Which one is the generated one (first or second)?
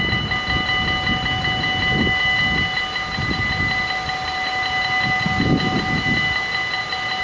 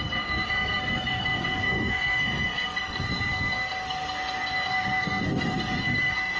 second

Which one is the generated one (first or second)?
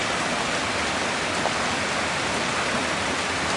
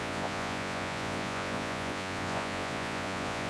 second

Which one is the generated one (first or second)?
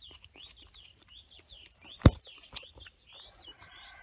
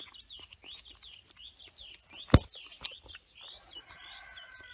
first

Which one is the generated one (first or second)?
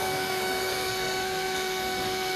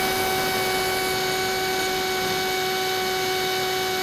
first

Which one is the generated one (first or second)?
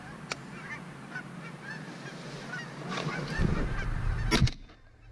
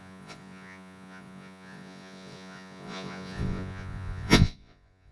second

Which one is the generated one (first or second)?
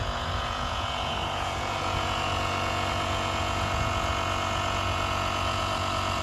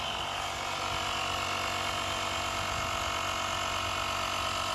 first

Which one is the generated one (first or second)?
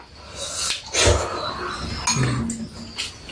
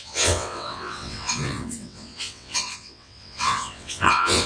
second